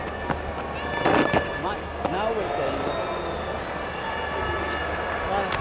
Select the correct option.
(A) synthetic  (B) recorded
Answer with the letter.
B